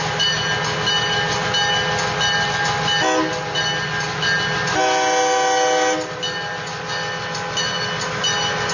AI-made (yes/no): no